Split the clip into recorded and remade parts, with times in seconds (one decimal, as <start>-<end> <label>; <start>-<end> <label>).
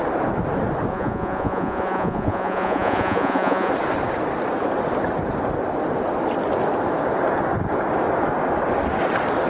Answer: 0.0-0.9 recorded; 0.9-3.7 remade; 3.7-9.5 recorded